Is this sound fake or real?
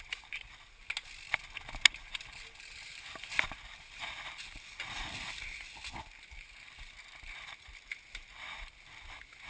real